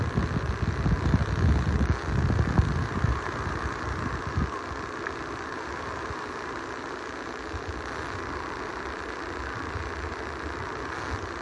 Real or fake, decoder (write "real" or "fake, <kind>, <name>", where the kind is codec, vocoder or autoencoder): real